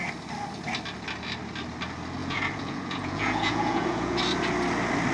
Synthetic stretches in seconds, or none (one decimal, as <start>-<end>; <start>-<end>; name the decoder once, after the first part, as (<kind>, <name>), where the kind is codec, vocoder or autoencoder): 2.2-4.2 (vocoder, Vocos)